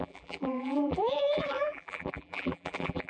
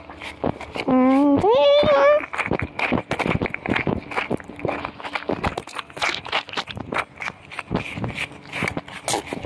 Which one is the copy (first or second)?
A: first